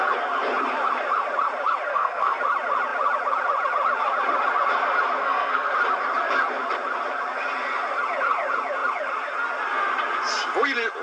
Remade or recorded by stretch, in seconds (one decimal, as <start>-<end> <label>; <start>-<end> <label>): 0.0-1.9 recorded; 1.9-2.4 remade; 2.4-5.2 recorded; 5.2-5.7 remade; 5.7-11.0 recorded

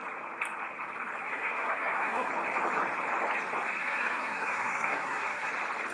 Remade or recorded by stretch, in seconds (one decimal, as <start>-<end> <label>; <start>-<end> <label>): 0.0-1.2 recorded; 1.2-2.3 remade; 2.3-3.8 recorded; 3.8-5.5 remade; 5.5-5.9 recorded

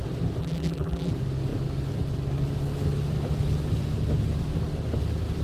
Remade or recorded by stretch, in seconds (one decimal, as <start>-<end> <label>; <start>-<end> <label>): 0.0-0.4 recorded; 0.4-1.1 remade; 1.1-5.4 recorded

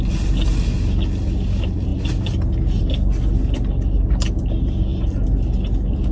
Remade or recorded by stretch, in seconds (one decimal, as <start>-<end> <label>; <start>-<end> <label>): 0.0-6.1 recorded

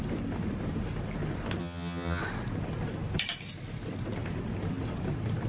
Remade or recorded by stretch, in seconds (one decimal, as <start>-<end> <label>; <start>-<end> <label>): 0.0-1.6 recorded; 1.6-2.2 remade; 2.2-5.5 recorded